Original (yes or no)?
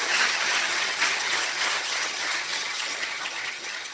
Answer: no